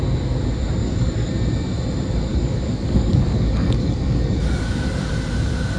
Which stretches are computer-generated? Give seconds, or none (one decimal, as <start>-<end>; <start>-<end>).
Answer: 0.8-1.3; 2.3-5.1